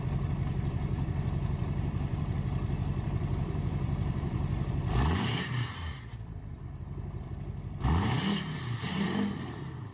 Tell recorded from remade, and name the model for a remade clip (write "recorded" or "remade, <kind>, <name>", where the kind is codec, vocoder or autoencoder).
remade, vocoder, BigVGAN v2